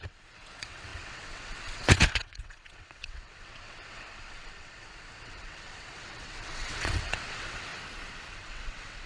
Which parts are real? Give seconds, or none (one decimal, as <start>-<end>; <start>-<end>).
7.7-8.3